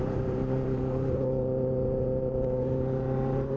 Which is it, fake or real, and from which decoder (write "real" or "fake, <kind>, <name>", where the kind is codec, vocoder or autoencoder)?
fake, vocoder, BigVGAN v2